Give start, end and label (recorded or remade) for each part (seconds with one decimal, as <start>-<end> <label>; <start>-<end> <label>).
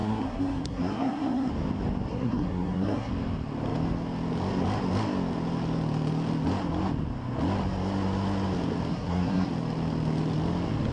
0.0-1.5 remade; 1.5-2.1 recorded; 2.1-3.1 remade; 3.1-8.9 recorded; 8.9-9.5 remade; 9.5-10.9 recorded